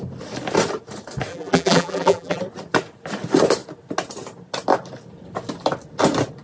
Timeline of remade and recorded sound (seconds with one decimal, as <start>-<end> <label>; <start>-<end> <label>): 0.0-1.3 recorded; 1.3-2.4 remade; 2.4-6.4 recorded